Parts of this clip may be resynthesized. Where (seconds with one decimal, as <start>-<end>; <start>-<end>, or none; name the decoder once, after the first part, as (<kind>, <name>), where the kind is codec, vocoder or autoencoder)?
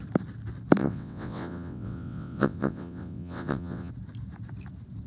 0.8-3.9 (vocoder, WaveNeXt)